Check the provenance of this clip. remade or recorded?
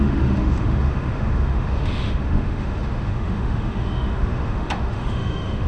remade